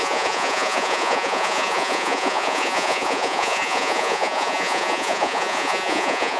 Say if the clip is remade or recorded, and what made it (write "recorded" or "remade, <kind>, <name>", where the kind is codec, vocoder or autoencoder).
remade, vocoder, Vocos